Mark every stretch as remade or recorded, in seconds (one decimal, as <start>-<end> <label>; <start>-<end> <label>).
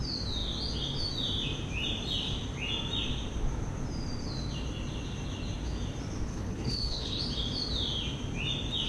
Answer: 0.0-6.3 recorded; 6.3-7.2 remade; 7.2-8.9 recorded